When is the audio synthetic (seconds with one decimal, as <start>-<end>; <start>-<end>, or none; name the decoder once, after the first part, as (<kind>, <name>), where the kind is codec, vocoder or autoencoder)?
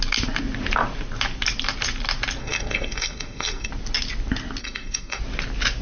2.4-3.7 (codec, SNAC); 4.6-5.2